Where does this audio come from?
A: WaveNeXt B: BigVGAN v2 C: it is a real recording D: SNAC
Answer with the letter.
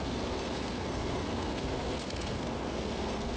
D